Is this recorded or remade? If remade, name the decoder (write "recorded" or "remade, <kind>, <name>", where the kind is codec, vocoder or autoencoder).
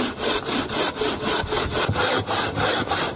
recorded